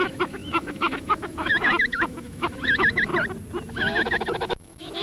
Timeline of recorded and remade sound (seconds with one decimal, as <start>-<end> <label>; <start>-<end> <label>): 0.0-3.1 remade; 3.1-3.7 recorded; 3.7-5.0 remade